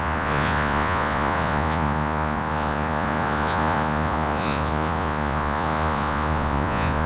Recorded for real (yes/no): no